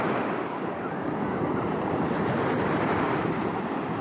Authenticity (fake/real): fake